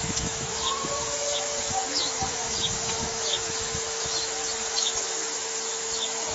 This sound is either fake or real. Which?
fake